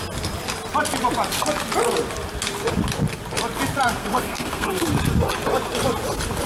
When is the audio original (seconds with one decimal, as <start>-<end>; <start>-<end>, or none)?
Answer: 0.0-4.0; 4.9-6.5